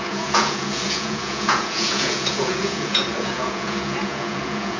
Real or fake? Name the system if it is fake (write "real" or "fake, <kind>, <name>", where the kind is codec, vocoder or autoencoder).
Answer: fake, vocoder, Vocos